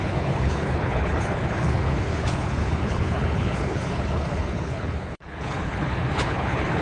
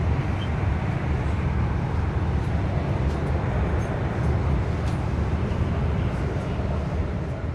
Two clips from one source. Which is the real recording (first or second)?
second